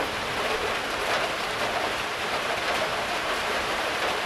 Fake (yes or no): yes